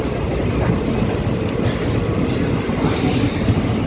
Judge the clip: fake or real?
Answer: real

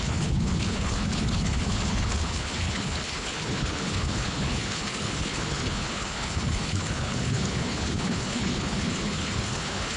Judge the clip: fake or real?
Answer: fake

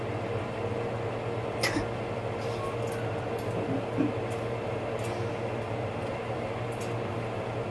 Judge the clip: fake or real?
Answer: real